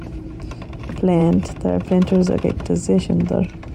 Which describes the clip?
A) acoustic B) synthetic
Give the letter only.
B